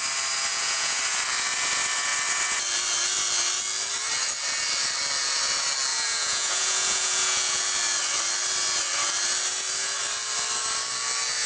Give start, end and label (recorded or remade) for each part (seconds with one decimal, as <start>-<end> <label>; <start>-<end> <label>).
0.0-0.5 recorded; 0.5-1.0 remade; 1.0-5.9 recorded; 5.9-7.6 remade; 7.6-11.5 recorded